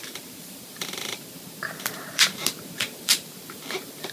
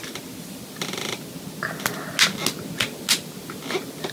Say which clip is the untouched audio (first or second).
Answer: second